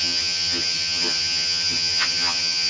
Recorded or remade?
remade